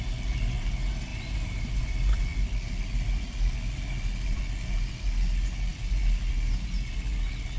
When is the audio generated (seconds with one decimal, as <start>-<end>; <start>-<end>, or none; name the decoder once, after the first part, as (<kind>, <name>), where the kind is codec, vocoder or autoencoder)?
none